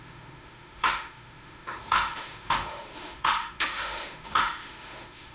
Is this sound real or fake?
fake